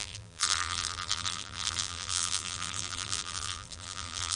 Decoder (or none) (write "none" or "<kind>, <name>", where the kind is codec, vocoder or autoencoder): vocoder, BigVGAN v2